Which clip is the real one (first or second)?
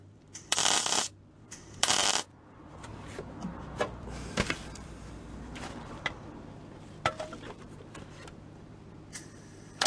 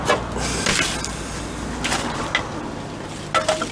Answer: second